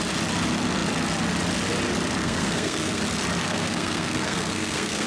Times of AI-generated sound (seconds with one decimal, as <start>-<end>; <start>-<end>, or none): 2.2-3.0; 3.4-5.1